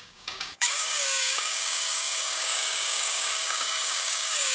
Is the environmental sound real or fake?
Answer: fake